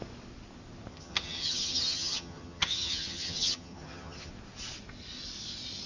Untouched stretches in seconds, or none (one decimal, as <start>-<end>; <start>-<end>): 0.0-0.9; 4.3-5.9